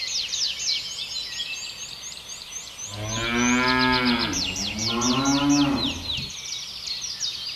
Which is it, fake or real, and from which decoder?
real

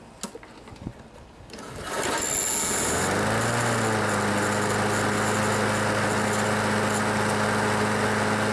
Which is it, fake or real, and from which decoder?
real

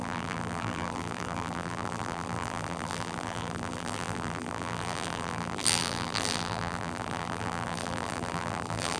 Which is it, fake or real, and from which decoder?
fake, vocoder, BigVGAN v2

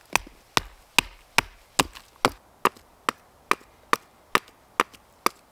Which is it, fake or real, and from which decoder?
real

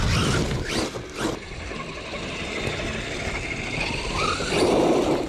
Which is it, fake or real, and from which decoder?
real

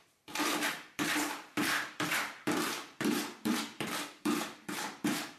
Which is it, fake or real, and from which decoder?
fake, vocoder, BigVGAN v2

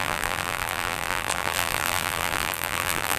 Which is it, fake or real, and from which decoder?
fake, vocoder, BigVGAN v2